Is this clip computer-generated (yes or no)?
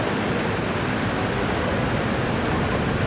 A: no